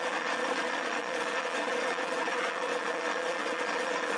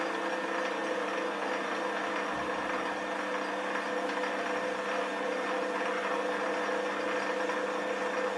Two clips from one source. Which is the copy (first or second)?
first